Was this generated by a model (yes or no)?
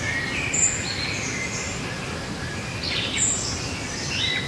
no